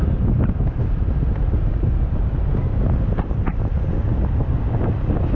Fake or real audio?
real